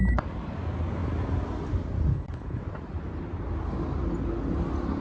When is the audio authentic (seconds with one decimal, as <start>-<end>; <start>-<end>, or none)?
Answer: 0.0-2.1; 2.6-5.0